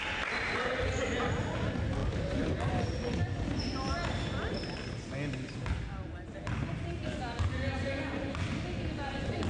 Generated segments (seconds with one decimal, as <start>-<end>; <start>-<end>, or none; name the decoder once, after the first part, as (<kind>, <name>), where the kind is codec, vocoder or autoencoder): none